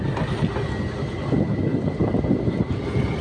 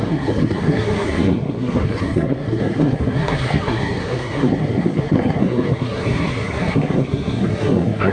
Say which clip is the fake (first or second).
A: second